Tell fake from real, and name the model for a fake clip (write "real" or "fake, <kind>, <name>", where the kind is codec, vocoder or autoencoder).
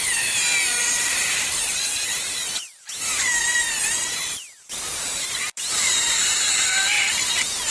fake, vocoder, BigVGAN v2